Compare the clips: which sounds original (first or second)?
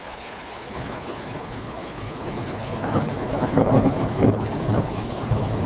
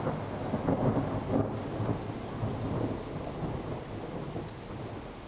second